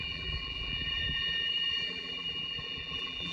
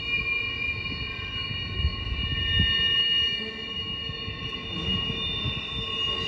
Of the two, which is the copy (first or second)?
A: first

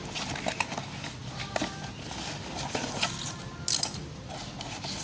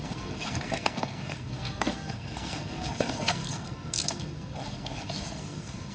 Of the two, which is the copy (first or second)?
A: second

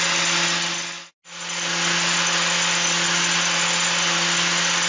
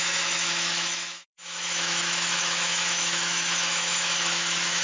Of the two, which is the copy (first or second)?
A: second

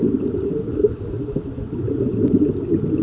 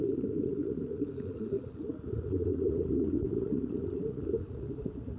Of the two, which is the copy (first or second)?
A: second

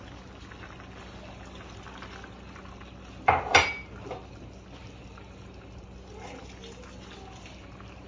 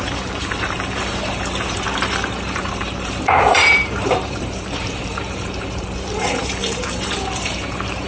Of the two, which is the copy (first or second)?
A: second